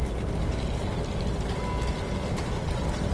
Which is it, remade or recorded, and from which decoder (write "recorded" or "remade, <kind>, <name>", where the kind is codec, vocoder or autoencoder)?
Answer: recorded